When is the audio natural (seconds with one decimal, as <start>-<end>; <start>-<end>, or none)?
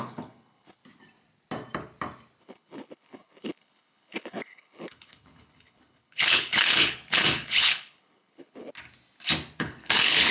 0.8-2.4; 8.7-9.6